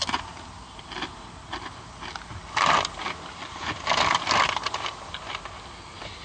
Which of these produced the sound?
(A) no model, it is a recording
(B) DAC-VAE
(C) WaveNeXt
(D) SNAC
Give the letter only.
A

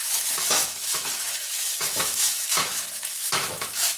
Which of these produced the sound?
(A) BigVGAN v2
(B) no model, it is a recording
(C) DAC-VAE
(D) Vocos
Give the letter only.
C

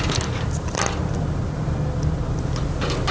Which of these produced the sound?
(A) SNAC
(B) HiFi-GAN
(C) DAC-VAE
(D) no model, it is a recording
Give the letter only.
D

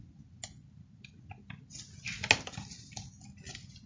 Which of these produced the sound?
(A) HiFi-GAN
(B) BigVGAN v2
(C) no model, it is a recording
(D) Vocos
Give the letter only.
C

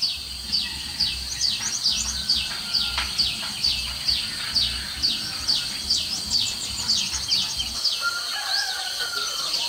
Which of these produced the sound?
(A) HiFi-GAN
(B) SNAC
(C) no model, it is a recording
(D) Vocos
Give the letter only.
C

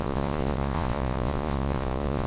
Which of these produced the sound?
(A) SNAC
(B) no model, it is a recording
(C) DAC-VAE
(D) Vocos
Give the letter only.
D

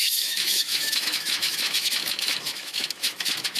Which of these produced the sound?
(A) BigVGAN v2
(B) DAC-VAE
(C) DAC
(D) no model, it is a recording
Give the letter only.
B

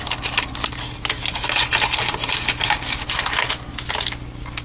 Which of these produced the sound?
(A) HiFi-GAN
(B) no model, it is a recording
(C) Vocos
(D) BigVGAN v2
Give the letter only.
B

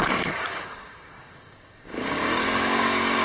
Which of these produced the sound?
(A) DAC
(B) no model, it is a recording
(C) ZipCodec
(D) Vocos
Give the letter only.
A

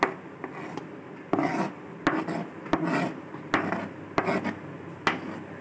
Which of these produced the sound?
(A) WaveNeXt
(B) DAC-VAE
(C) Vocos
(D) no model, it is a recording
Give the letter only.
D